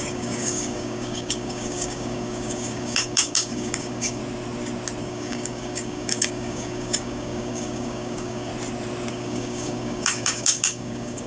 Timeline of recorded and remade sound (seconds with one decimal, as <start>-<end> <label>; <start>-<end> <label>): 0.0-4.2 remade; 4.2-5.0 recorded; 5.0-8.5 remade; 8.5-9.1 recorded; 9.1-11.3 remade